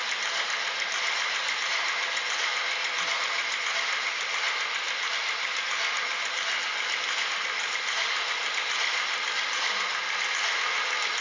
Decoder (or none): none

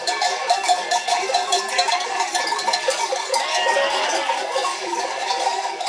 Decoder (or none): codec, DAC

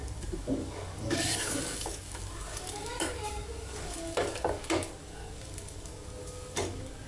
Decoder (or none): codec, DAC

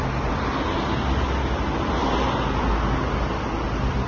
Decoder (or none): none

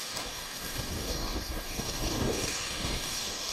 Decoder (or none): codec, DAC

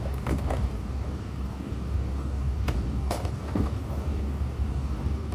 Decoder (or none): codec, DAC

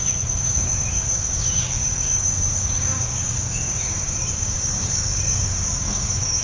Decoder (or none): codec, DAC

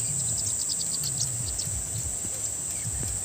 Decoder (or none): none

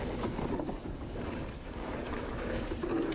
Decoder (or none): codec, DAC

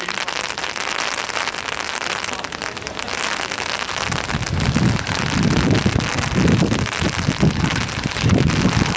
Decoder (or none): none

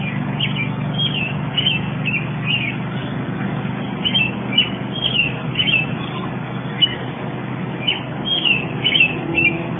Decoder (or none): codec, DAC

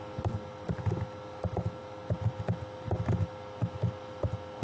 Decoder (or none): none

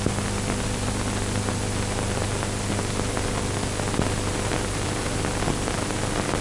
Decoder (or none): none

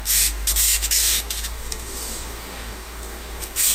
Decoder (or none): codec, DAC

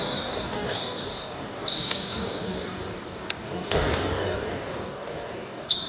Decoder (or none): codec, DAC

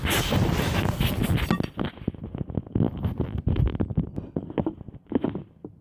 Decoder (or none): none